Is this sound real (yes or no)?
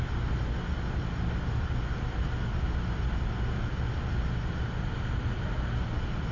yes